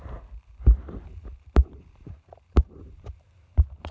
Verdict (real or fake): fake